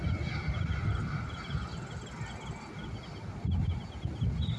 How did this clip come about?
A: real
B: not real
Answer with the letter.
A